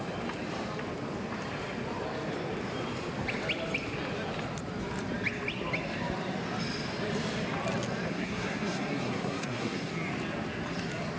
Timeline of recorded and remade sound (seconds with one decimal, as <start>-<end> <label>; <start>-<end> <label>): 0.0-8.1 recorded; 8.1-9.9 remade; 9.9-11.2 recorded